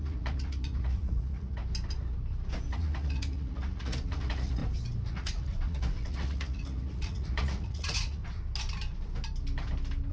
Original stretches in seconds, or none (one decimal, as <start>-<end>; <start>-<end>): 1.6-2.7; 4.6-5.1; 8.2-10.1